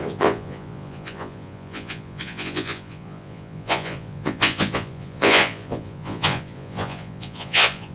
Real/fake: fake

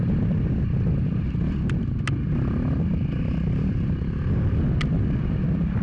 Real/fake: real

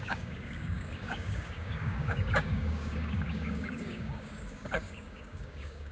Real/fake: fake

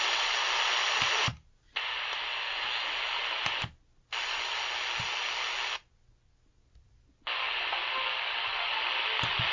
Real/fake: real